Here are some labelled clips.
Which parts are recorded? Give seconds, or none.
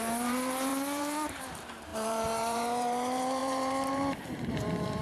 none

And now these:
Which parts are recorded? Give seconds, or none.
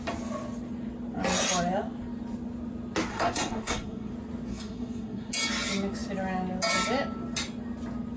0.0-3.1; 4.1-4.5; 5.3-8.2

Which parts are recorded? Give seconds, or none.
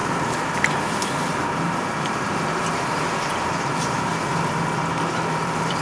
4.1-5.1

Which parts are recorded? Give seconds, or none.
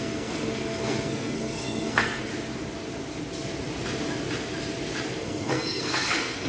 2.3-5.2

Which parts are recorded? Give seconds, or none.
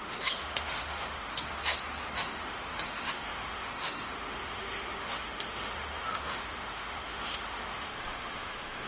1.5-2.1